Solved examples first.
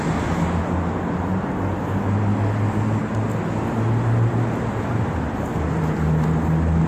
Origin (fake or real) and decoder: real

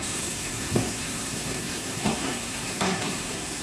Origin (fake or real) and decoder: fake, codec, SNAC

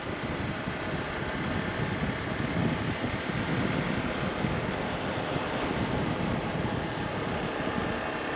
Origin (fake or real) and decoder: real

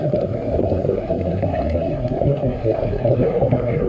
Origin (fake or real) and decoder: fake, codec, SNAC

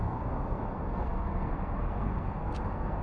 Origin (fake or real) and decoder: fake, codec, SNAC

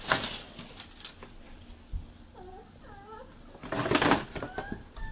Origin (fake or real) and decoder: real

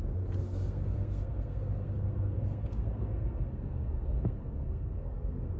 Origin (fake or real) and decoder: fake, codec, SNAC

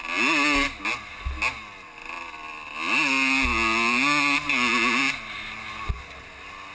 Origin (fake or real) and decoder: real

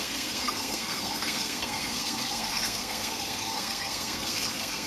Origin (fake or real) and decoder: fake, codec, SNAC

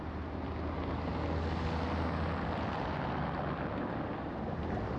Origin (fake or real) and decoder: real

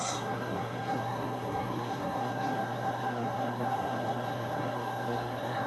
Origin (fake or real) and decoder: fake, codec, SNAC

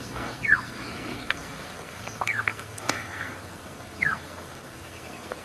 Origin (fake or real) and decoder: fake, codec, SNAC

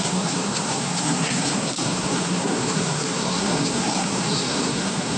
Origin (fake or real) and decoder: fake, codec, SNAC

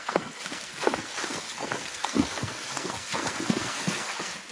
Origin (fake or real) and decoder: fake, codec, SNAC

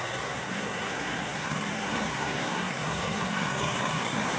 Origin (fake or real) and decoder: fake, codec, SNAC